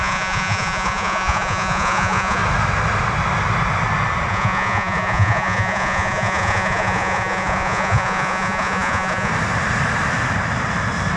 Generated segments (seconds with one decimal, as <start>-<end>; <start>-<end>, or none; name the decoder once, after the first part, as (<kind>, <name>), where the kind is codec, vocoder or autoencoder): 0.0-2.4 (vocoder, Vocos); 4.3-9.3

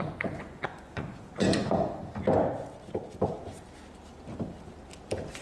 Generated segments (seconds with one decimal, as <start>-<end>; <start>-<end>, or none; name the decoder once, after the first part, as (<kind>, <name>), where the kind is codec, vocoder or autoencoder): 0.0-2.0 (vocoder, Vocos)